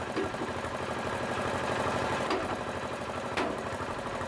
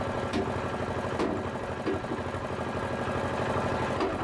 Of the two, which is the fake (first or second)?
first